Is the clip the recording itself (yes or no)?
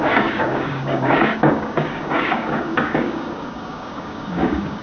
no